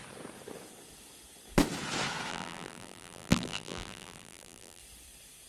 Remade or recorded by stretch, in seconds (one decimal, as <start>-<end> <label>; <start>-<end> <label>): 0.0-2.3 recorded; 2.3-4.8 remade; 4.8-5.5 recorded